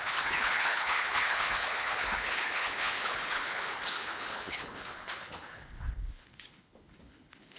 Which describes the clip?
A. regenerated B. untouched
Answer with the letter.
A